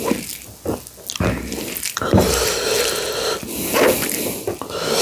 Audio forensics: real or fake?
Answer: real